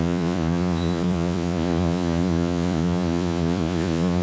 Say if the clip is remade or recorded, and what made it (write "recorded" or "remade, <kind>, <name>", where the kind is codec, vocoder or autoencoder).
remade, vocoder, Vocos